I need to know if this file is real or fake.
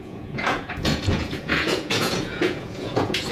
fake